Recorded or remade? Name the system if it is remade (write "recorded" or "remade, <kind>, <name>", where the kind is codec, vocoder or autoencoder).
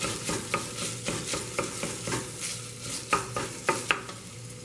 recorded